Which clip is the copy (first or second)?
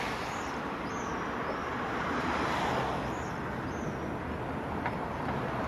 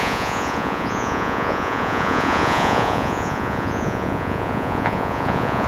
second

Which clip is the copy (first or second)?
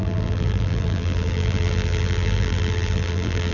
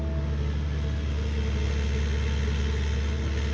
first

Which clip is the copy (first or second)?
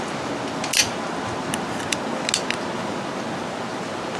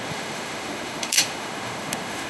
second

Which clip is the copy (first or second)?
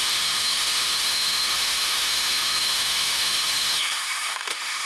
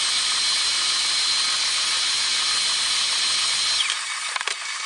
first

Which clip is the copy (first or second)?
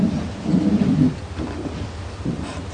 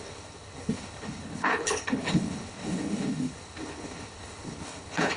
second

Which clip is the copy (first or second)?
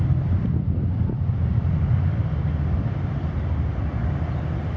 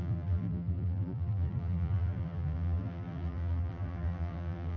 second